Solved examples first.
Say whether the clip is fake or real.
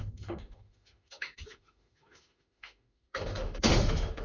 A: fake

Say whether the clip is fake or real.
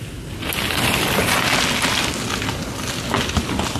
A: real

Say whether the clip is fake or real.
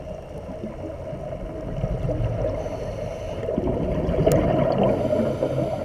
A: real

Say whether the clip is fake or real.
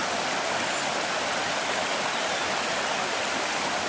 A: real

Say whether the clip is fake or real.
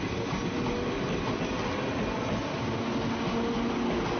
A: real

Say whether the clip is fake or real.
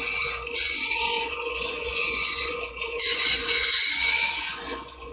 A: fake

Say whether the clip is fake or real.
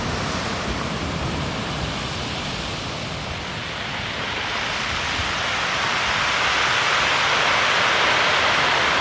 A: real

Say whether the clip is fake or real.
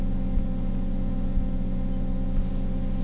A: real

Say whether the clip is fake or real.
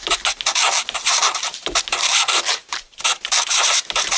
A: fake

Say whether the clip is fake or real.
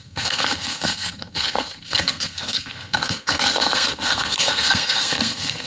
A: fake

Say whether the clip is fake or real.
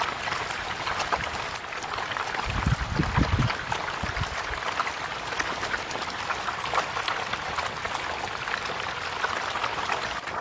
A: real